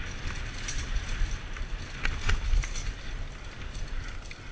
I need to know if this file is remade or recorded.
recorded